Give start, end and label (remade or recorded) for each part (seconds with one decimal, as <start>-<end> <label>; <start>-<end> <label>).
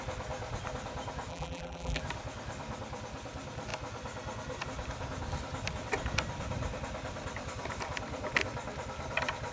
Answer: 0.0-1.3 recorded; 1.3-2.0 remade; 2.0-9.5 recorded